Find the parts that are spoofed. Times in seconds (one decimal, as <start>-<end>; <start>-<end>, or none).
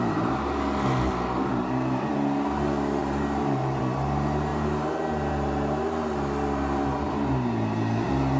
3.0-3.8